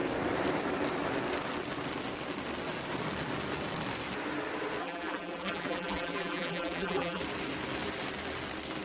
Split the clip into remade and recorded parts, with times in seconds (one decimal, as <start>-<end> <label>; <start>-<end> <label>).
0.0-4.8 recorded; 4.8-7.2 remade; 7.2-8.8 recorded